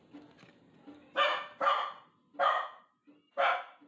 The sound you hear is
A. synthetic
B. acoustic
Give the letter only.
B